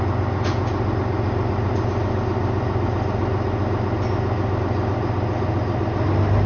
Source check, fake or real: real